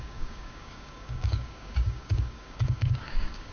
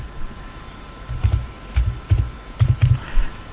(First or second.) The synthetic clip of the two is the first